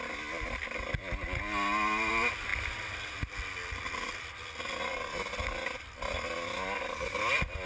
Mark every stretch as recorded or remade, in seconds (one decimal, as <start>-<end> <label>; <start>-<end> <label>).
0.0-7.7 recorded

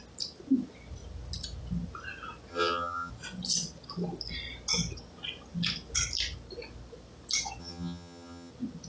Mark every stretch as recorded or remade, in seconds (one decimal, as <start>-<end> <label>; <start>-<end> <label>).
0.0-2.5 recorded; 2.5-3.1 remade; 3.1-7.6 recorded; 7.6-8.5 remade; 8.5-8.9 recorded